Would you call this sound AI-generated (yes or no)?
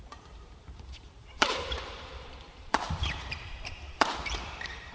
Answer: yes